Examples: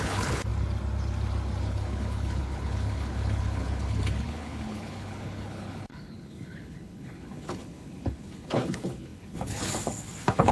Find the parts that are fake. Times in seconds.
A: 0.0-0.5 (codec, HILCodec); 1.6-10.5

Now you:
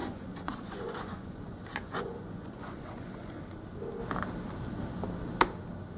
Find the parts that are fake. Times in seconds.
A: 0.0-3.4 (vocoder, Vocos)

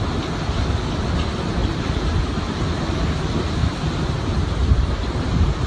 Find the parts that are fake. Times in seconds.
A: none

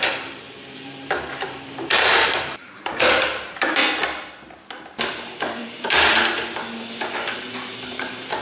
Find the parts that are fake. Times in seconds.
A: 0.0-3.8 (vocoder, BigVGAN v2); 5.4-6.2; 7.9-8.4

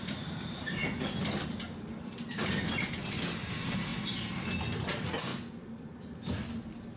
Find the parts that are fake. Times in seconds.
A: 0.0-0.8 (vocoder, BigVGAN v2); 2.0-3.9; 4.7-5.3

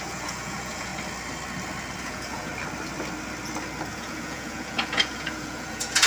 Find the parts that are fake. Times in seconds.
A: 0.0-0.9 (vocoder, Vocos); 2.0-2.5; 3.9-6.1

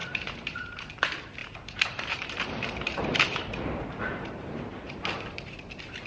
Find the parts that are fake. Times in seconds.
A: 0.0-0.9 (vocoder, BigVGAN v2); 1.4-5.0

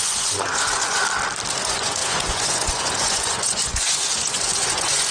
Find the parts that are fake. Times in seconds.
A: 0.0-1.0 (vocoder, Vocos); 1.5-5.1